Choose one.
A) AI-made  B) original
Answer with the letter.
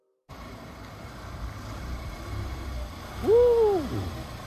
B